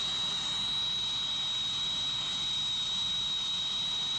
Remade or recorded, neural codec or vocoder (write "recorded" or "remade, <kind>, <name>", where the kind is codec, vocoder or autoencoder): recorded